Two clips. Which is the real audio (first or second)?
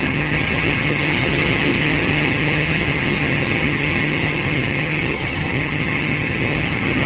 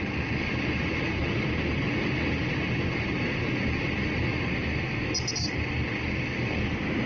second